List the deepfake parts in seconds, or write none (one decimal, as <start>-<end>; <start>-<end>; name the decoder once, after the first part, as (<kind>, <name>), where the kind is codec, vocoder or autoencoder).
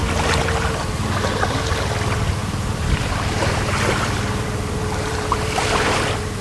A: 2.4-6.4 (vocoder, BigVGAN v2)